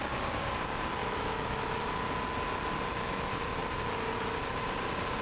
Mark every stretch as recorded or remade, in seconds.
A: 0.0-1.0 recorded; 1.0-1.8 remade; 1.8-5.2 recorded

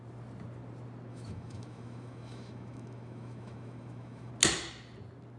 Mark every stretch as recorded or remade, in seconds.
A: 0.0-1.1 recorded; 1.1-4.3 remade; 4.3-5.4 recorded